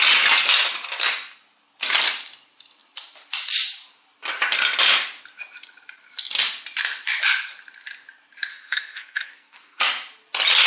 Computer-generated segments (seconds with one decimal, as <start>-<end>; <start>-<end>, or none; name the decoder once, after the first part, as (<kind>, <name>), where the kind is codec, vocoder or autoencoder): 8.5-9.8 (codec, SNAC)